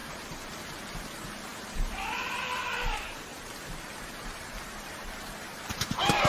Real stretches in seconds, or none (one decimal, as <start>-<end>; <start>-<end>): 3.3-4.0